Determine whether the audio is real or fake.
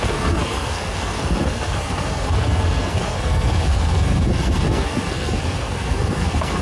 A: fake